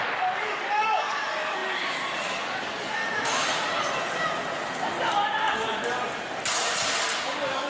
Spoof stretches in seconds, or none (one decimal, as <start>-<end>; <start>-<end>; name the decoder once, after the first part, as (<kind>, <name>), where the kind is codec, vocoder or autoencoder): 0.0-3.0 (codec, DAC); 7.0-7.7